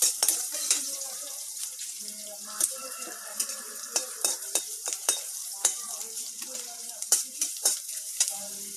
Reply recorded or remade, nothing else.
remade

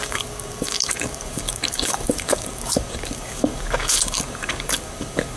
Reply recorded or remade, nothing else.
remade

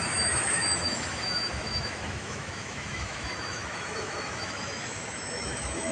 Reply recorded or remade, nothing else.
remade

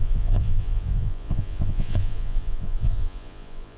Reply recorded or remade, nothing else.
remade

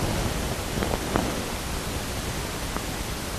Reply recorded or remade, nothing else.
recorded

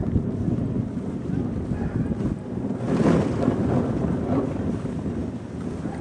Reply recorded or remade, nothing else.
recorded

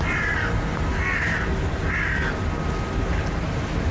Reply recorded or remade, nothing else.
recorded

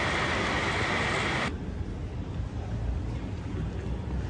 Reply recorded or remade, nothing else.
recorded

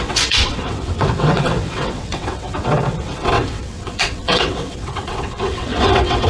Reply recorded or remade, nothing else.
remade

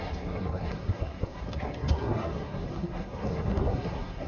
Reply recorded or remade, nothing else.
remade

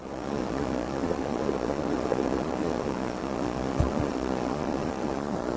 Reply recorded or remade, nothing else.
remade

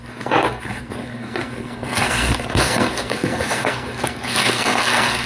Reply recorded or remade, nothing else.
remade